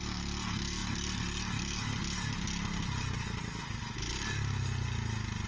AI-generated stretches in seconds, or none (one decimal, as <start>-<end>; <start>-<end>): none